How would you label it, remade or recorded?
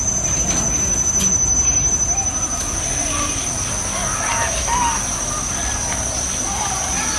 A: recorded